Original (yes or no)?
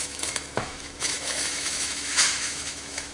no